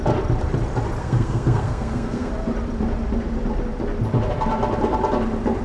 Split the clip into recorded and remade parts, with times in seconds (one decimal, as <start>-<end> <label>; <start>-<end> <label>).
0.0-1.0 recorded; 1.0-2.3 remade; 2.3-5.6 recorded